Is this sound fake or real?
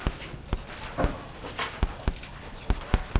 real